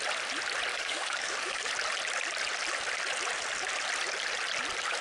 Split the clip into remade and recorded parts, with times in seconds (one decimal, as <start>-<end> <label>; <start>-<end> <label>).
0.0-0.7 recorded; 0.7-1.7 remade; 1.7-5.0 recorded